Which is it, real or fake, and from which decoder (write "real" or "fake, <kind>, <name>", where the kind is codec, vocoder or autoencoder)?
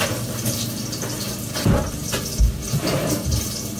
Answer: real